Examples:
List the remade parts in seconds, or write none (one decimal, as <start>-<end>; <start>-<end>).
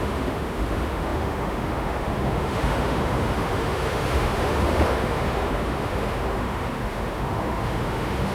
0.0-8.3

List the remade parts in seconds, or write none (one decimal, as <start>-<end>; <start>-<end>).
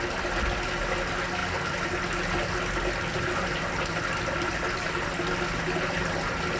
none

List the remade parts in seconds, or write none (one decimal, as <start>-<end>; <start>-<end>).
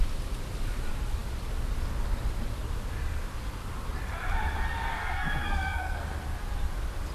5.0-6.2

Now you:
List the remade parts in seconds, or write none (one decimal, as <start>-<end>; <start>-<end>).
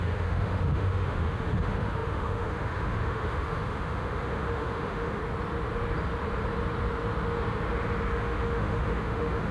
0.0-5.2; 8.1-9.5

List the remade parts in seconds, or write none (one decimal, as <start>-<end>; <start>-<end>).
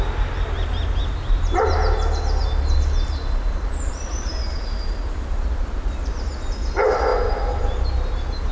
none